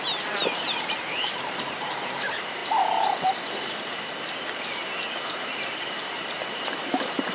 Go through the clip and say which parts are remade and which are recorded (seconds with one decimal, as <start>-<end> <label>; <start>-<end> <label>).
0.0-2.6 remade; 2.6-5.3 recorded; 5.3-7.3 remade